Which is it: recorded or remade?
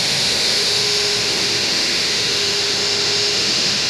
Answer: remade